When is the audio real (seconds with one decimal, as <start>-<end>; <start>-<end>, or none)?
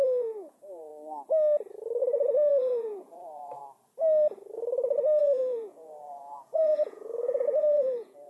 0.9-2.0; 3.6-5.2